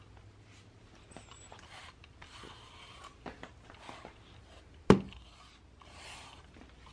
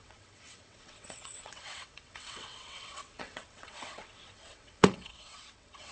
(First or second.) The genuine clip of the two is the first